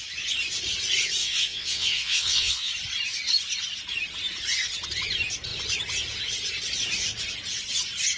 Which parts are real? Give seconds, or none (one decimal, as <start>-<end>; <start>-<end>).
0.0-1.2; 2.7-8.2